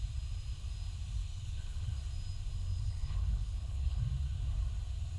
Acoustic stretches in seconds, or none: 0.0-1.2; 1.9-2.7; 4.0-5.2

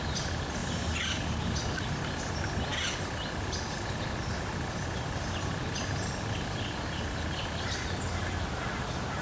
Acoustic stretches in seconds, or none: 0.0-9.2

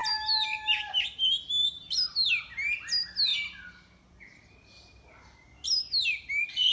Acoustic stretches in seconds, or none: 0.0-6.7

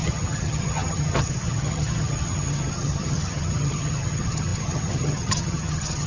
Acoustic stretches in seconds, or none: none

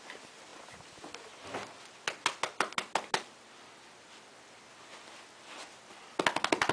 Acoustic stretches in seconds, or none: 0.0-6.7

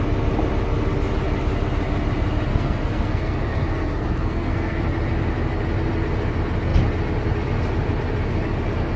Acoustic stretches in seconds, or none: 0.0-2.5; 4.8-9.0